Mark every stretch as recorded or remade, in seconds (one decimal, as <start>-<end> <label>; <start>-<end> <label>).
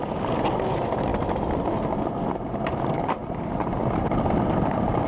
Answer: 0.0-1.1 remade; 1.1-2.8 recorded; 2.8-5.1 remade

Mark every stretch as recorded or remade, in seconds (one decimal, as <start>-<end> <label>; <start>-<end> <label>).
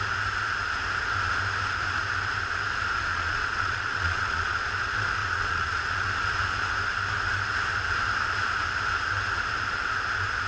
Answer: 0.0-3.1 recorded; 3.1-4.7 remade; 4.7-5.2 recorded; 5.2-6.1 remade; 6.1-10.5 recorded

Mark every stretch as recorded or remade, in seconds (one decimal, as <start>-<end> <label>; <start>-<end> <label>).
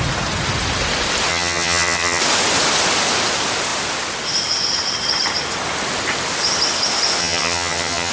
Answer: 0.0-1.3 recorded; 1.3-2.2 remade; 2.2-7.2 recorded; 7.2-8.1 remade